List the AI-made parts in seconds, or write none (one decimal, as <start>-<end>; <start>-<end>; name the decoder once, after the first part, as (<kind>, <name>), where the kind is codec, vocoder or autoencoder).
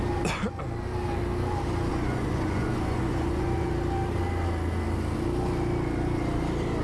1.9-3.7 (vocoder, Vocos)